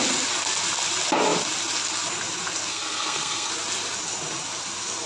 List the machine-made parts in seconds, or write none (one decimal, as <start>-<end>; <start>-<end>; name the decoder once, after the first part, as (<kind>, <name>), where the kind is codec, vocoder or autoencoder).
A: 2.7-3.5 (codec, SNAC)